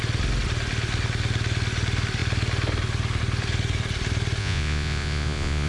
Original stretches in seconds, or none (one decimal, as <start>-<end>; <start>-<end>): 0.0-4.4